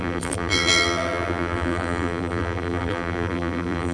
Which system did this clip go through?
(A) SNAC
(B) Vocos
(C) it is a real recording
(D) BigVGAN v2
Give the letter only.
D